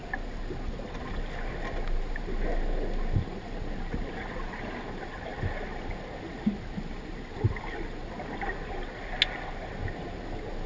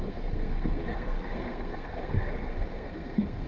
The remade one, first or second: second